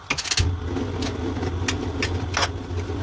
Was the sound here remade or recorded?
recorded